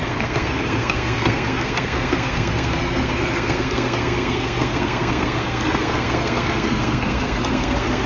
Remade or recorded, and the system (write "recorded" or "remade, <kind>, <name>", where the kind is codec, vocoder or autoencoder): remade, codec, SNAC